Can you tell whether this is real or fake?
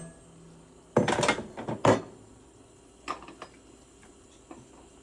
real